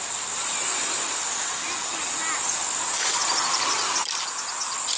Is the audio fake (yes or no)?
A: no